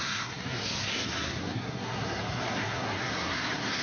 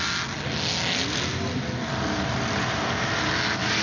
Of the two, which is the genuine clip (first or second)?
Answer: second